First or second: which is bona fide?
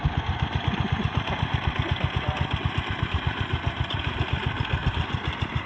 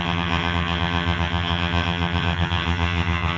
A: first